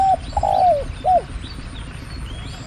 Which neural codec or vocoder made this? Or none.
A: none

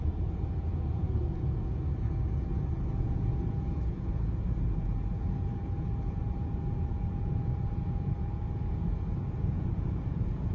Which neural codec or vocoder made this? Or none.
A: vocoder, Vocos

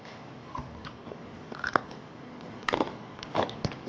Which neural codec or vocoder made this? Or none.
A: codec, DAC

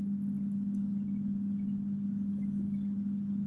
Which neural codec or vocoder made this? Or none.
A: none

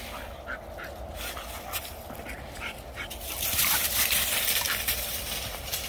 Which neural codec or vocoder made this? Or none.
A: none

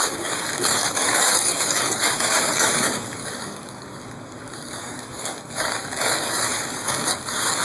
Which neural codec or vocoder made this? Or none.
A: codec, DAC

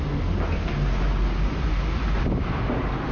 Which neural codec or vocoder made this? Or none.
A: none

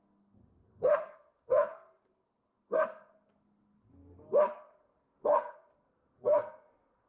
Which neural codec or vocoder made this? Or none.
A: codec, SNAC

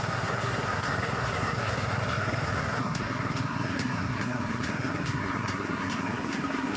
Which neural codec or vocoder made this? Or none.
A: codec, SNAC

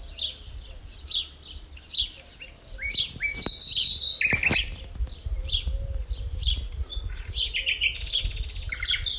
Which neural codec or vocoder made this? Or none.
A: none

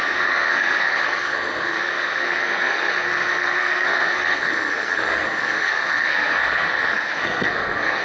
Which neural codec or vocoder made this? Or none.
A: codec, SNAC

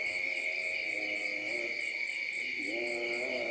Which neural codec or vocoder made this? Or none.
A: none